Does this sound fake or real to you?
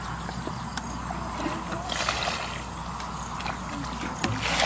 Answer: real